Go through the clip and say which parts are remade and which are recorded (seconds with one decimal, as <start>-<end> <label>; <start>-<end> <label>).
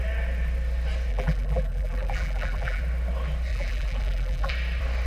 0.0-1.1 recorded; 1.1-2.8 remade; 2.8-3.5 recorded; 3.5-4.5 remade; 4.5-5.1 recorded